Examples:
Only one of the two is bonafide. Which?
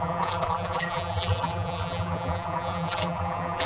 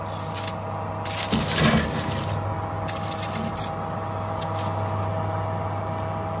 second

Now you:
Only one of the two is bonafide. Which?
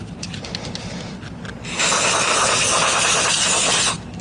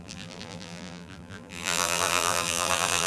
first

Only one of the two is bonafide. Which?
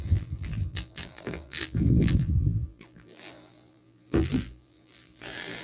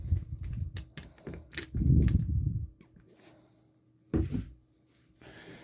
second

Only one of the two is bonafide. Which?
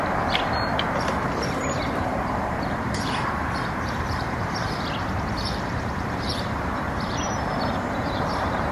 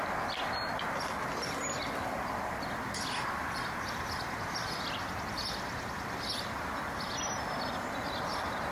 second